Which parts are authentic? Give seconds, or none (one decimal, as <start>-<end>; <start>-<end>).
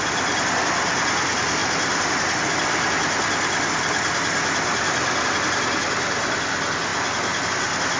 0.0-8.0